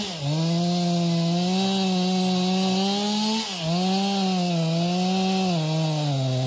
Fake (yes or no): no